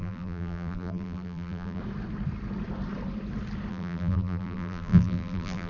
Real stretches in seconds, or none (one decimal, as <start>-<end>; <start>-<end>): 1.8-3.7